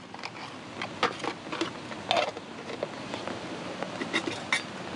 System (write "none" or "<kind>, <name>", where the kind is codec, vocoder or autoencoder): none